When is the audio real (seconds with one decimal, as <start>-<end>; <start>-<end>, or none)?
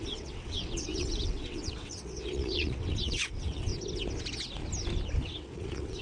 3.7-5.2